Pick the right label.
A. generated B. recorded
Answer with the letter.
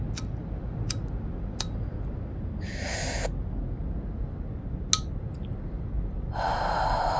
B